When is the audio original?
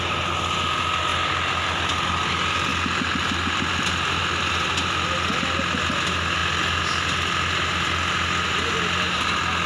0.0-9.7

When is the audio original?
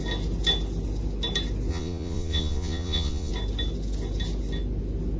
0.0-1.7; 3.3-5.2